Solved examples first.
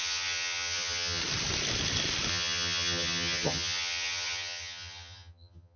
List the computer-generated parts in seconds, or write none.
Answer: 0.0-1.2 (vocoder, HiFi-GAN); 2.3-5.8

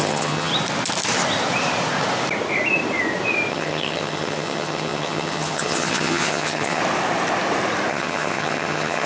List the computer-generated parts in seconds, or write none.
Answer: 0.0-0.5 (vocoder, HiFi-GAN); 3.5-6.8; 7.9-9.1

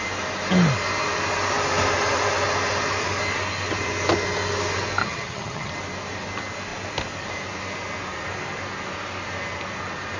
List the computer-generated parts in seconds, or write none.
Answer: 5.0-5.7 (vocoder, HiFi-GAN)

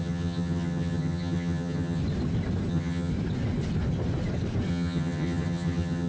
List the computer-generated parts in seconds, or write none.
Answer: 0.0-2.0 (vocoder, HiFi-GAN); 2.7-3.1; 4.7-6.1

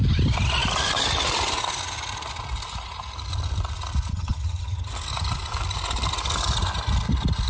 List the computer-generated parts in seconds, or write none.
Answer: 4.1-4.9 (vocoder, HiFi-GAN)

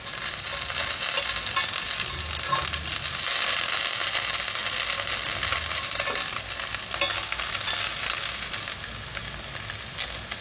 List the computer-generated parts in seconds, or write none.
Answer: none

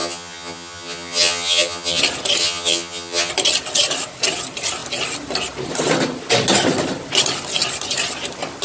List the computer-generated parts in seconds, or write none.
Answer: 0.0-2.0 (vocoder, HiFi-GAN); 2.4-3.3